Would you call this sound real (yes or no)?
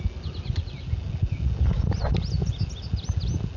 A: yes